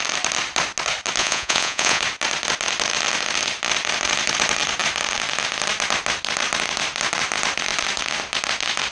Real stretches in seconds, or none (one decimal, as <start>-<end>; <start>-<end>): 0.0-1.2; 2.0-8.9